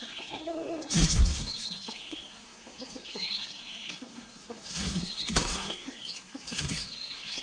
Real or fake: fake